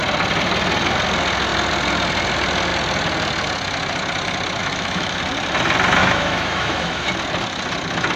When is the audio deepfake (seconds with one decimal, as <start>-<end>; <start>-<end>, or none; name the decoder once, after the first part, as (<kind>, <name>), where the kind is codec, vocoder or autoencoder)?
4.6-5.2 (autoencoder, DAC-VAE); 6.0-7.1